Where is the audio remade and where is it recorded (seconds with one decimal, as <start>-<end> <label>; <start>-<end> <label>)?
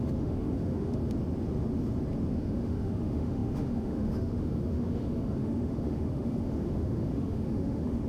0.0-1.0 remade; 1.0-2.3 recorded; 2.3-8.1 remade